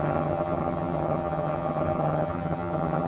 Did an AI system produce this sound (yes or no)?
yes